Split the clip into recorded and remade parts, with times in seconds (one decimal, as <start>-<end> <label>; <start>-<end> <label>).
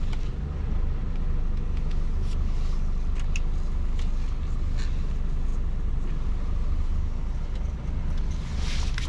0.0-9.1 recorded